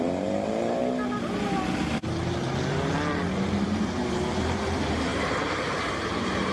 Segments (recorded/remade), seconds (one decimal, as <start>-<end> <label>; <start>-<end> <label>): 0.0-0.8 remade; 0.8-4.4 recorded; 4.4-6.5 remade